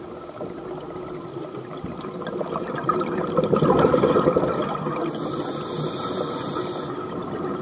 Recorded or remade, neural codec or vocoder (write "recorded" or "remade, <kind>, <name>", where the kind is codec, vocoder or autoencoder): recorded